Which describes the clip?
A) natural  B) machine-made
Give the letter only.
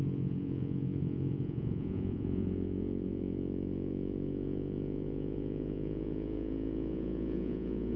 B